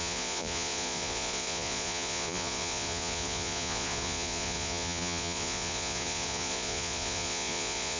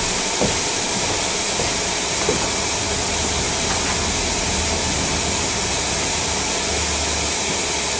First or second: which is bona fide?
second